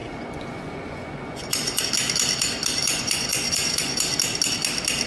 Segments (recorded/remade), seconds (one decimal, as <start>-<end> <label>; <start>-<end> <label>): 0.0-1.8 remade; 1.8-2.8 recorded; 2.8-4.0 remade; 4.0-5.1 recorded